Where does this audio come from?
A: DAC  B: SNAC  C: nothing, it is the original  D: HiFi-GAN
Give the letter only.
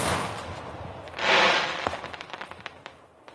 C